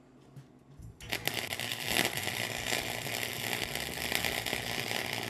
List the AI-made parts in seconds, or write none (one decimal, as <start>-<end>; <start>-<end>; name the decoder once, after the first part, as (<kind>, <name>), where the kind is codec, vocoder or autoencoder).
none